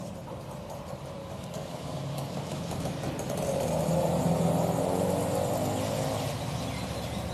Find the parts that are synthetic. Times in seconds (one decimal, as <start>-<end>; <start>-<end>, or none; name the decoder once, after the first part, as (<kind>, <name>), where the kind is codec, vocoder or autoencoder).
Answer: 1.2-2.8 (codec, DAC)

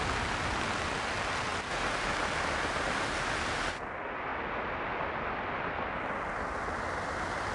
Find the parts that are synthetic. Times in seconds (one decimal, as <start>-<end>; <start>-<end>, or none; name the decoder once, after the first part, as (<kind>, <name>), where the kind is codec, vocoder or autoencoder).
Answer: none

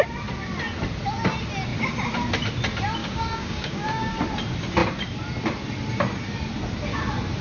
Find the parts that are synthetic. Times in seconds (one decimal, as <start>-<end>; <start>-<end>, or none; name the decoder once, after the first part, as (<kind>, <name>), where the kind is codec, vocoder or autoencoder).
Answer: 3.0-4.1 (codec, DAC)

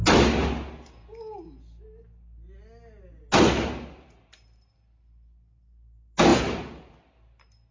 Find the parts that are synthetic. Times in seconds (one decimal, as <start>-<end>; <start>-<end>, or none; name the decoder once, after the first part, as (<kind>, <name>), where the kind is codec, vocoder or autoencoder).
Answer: 6.3-6.9 (vocoder, BigVGAN v2)

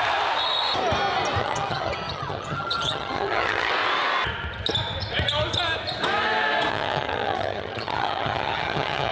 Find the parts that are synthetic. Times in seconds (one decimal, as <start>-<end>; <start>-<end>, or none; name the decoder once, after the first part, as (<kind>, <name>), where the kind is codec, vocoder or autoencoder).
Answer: 1.4-3.7 (vocoder, HiFi-GAN); 6.7-9.1